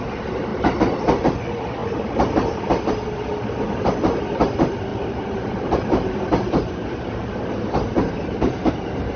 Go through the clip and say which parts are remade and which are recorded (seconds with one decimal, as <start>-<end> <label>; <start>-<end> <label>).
0.0-0.5 recorded; 0.5-1.0 remade; 1.0-1.8 recorded; 1.8-2.9 remade; 2.9-4.9 recorded; 4.9-8.7 remade; 8.7-9.2 recorded